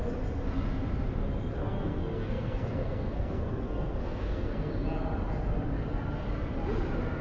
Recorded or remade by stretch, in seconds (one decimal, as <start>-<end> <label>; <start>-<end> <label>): 0.0-1.6 recorded; 1.6-4.7 remade; 4.7-7.2 recorded